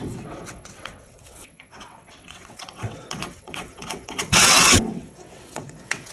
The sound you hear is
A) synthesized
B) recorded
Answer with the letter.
A